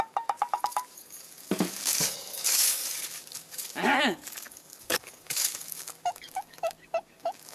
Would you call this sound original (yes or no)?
no